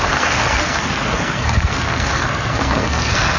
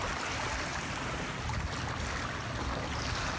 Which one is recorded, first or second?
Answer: second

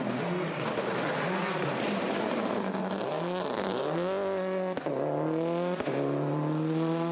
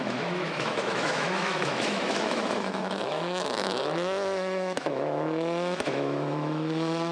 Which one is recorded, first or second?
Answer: first